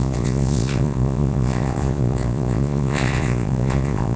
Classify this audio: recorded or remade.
remade